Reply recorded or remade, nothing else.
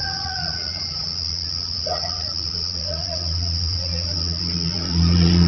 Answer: remade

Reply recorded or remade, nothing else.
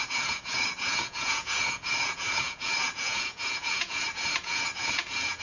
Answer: remade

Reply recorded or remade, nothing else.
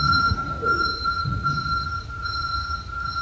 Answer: remade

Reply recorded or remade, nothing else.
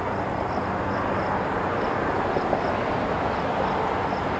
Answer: recorded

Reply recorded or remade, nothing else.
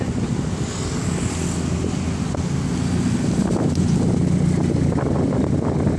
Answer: recorded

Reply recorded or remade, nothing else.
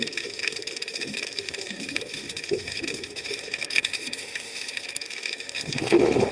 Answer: remade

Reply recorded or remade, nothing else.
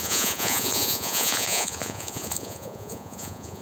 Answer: remade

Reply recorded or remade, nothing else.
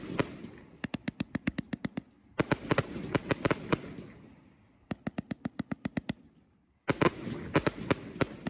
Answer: recorded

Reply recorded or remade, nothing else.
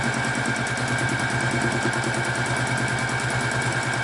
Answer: recorded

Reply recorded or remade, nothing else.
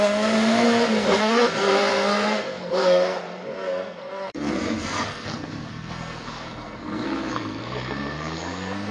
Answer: remade